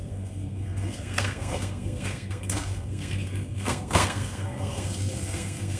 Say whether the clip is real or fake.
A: fake